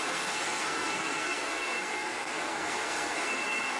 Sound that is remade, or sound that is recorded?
remade